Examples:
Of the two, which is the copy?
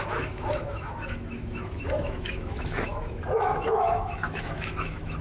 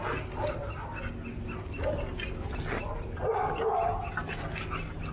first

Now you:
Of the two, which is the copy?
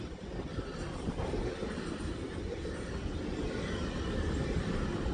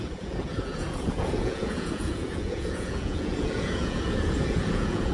second